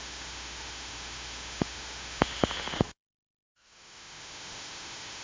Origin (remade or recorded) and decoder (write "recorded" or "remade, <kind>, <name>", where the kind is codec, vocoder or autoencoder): remade, autoencoder, DAC-VAE